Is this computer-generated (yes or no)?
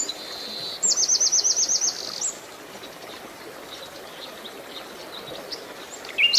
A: no